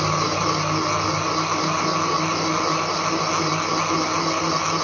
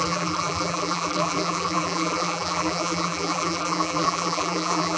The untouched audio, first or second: first